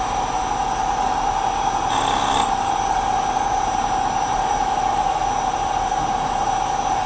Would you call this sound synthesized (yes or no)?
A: no